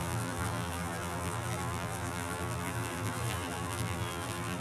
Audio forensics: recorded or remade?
remade